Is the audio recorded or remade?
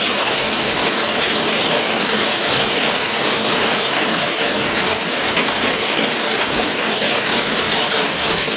remade